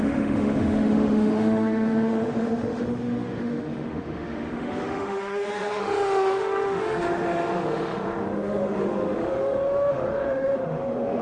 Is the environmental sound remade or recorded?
remade